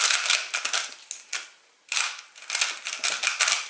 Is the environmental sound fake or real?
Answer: real